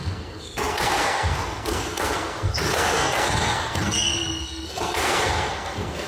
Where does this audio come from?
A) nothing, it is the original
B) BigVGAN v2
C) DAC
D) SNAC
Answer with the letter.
D